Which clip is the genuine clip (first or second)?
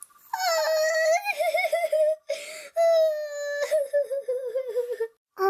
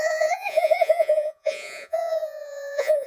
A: first